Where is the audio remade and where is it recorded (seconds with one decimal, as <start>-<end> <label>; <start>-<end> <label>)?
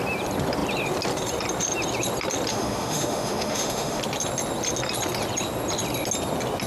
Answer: 0.0-2.5 recorded; 2.5-4.0 remade; 4.0-6.7 recorded